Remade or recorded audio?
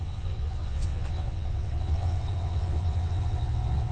remade